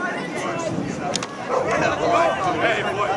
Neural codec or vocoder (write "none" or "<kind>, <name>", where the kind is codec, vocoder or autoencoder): none